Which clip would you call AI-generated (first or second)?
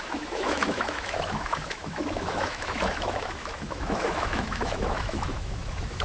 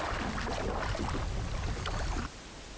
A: first